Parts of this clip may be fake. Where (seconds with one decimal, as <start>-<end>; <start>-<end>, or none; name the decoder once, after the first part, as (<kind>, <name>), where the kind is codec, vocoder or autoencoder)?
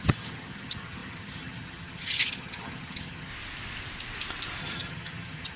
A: 0.0-3.3 (vocoder, HiFi-GAN); 4.6-5.6